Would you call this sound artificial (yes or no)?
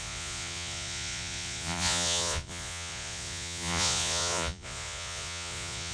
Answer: yes